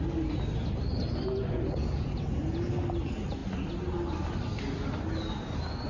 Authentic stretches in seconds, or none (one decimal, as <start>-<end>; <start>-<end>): 0.0-5.9